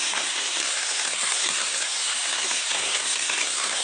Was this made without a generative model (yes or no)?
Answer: no